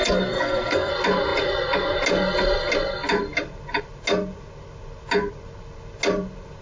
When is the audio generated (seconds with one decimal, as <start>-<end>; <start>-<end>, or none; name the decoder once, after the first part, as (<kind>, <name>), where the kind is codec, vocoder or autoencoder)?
0.0-0.9 (codec, SNAC)